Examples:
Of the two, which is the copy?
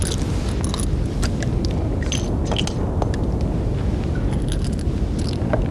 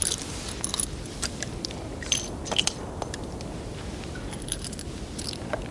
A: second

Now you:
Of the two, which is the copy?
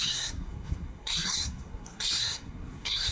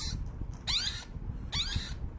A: first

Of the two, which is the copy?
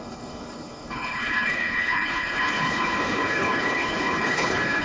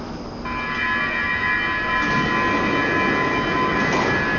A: first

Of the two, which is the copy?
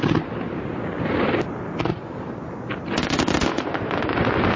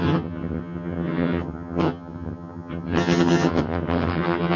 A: second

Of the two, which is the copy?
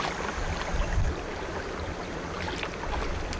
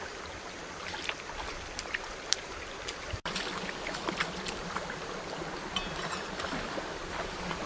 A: second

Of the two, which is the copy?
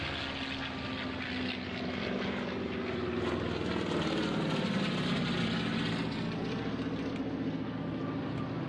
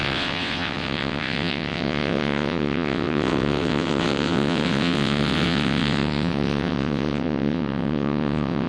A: second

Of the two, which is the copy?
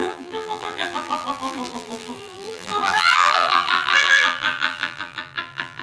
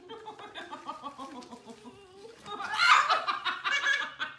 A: first